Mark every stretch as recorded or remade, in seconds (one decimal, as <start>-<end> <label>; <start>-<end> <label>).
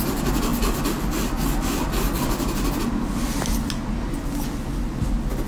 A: 0.0-5.5 recorded